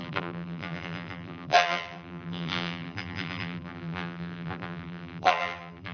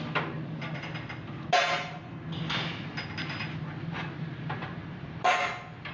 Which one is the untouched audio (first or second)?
second